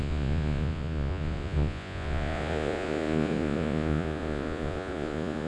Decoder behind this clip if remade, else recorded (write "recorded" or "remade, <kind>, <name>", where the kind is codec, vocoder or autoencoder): remade, vocoder, Vocos